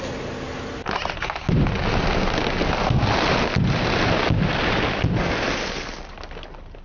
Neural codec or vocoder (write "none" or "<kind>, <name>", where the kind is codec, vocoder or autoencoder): none